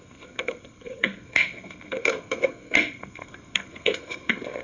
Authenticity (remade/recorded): remade